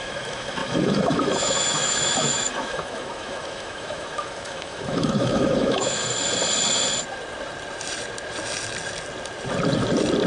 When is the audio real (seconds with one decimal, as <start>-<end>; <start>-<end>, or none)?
6.0-10.3